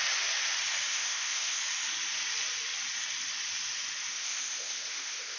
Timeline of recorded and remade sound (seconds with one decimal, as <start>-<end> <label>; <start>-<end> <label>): 0.0-0.9 recorded; 0.9-1.6 remade; 1.6-4.1 recorded; 4.1-5.4 remade